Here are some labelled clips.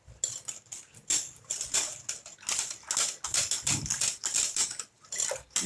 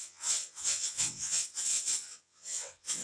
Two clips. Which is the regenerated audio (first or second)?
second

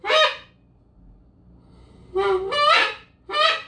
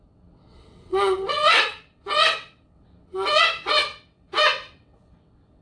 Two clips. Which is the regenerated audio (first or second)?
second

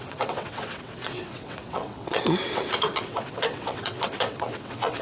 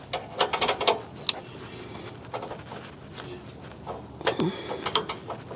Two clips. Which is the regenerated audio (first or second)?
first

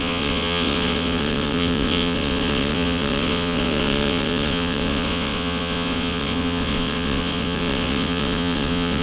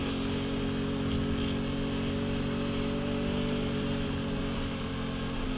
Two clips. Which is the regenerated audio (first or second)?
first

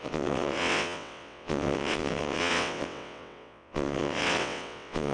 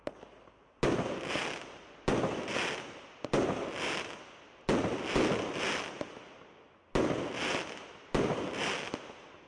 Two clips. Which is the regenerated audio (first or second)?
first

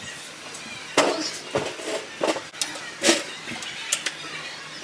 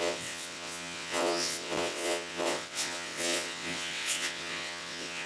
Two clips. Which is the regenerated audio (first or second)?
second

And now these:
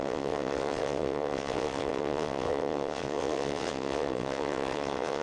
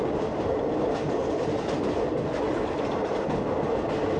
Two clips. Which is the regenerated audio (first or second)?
first